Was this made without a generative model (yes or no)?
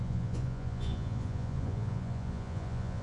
no